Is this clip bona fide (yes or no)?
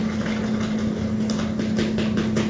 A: yes